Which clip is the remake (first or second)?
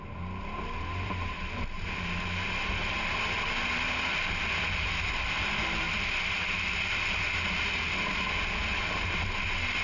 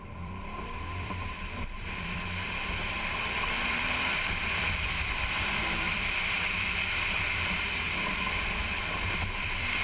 second